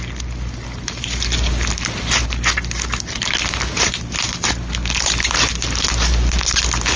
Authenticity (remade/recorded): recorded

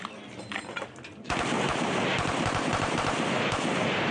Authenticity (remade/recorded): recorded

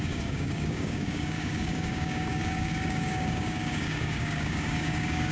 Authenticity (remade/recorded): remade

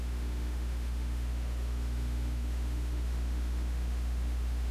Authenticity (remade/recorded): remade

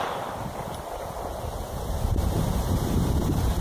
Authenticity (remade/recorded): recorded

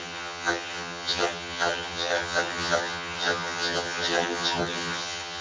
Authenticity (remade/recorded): remade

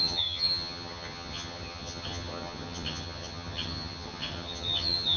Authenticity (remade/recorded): remade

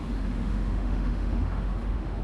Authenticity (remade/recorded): remade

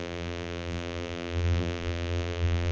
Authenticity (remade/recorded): remade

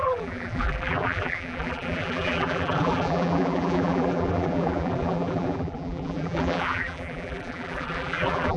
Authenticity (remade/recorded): remade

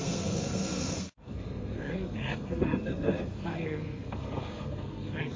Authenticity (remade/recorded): remade